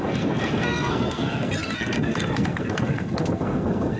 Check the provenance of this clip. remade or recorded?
remade